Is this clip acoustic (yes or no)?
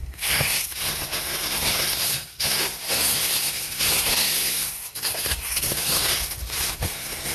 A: no